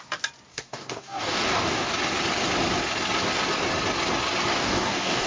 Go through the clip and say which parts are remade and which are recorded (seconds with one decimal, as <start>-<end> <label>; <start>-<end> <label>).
0.0-0.5 recorded; 0.5-1.9 remade; 1.9-4.6 recorded; 4.6-5.3 remade

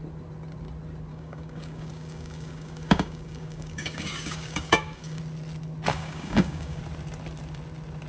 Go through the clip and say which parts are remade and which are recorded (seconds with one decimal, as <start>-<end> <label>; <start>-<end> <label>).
0.0-1.1 recorded; 1.1-5.2 remade; 5.2-5.9 recorded; 5.9-6.8 remade; 6.8-8.1 recorded